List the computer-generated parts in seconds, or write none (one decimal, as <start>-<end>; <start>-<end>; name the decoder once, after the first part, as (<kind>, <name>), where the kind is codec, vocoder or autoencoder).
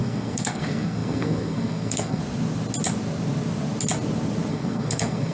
0.0-2.2 (codec, SNAC); 4.5-5.3